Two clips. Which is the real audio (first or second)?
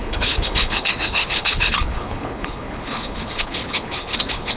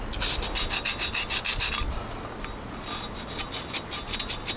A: second